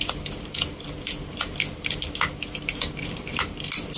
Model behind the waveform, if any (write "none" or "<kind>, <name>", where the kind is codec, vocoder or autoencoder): none